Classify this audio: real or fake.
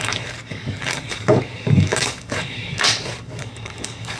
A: fake